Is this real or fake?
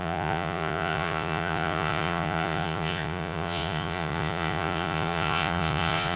fake